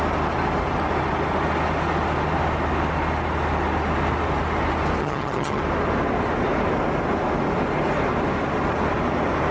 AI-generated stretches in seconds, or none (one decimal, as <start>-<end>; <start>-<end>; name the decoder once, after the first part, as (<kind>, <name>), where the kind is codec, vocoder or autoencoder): 5.0-5.6 (vocoder, HiFi-GAN)